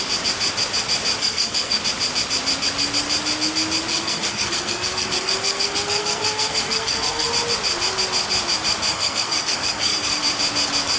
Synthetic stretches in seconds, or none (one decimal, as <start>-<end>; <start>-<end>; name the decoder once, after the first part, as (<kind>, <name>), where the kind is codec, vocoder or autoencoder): 1.2-1.8 (codec, SNAC); 3.9-7.3; 8.9-10.2